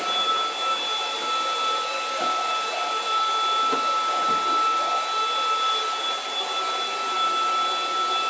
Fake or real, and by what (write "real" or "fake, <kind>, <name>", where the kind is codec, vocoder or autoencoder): real